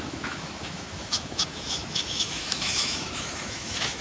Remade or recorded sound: remade